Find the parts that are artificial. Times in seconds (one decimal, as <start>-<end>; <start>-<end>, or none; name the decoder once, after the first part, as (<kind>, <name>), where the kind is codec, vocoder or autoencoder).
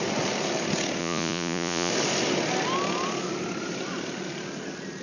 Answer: 1.0-1.9 (vocoder, Vocos)